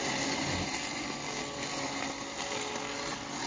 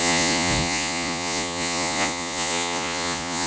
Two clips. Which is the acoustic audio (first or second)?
first